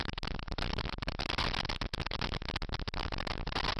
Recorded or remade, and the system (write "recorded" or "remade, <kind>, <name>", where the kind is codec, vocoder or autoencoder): recorded